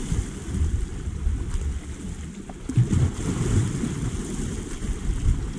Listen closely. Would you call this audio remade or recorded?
recorded